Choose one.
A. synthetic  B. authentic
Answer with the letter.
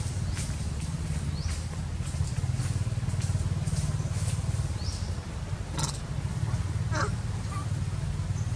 B